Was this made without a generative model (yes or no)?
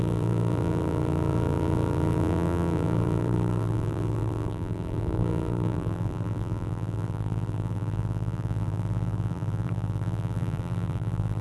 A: no